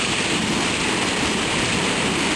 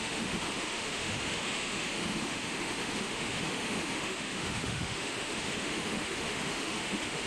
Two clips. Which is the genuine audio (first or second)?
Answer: first